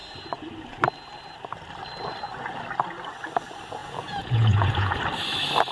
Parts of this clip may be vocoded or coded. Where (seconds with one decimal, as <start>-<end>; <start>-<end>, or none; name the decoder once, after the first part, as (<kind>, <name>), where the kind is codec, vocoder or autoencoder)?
3.8-5.0 (vocoder, Vocos)